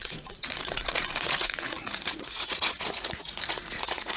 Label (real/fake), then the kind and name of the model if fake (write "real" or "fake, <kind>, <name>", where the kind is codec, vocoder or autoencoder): fake, vocoder, Vocos